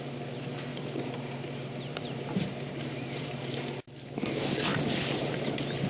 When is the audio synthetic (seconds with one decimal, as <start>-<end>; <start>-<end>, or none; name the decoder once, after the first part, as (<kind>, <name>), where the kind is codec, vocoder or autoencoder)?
0.7-3.7 (vocoder, BigVGAN v2); 4.7-5.5